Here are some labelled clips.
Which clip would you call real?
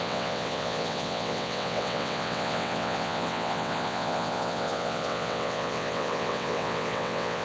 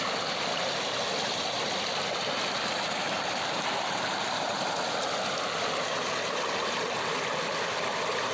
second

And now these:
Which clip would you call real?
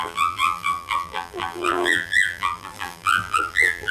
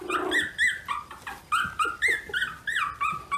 second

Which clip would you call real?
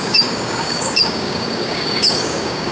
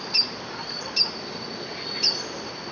second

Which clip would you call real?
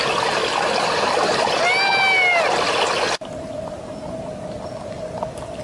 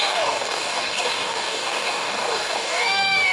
first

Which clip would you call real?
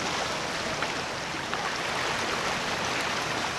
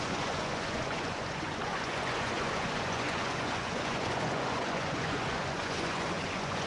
first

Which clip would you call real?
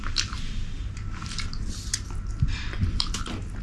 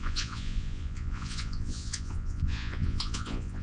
first